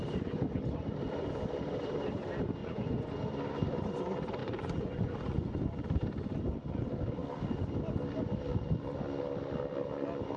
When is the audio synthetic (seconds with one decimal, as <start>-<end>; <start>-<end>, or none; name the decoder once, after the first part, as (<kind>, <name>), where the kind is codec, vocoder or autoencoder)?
2.6-3.1 (vocoder, Vocos); 4.4-5.6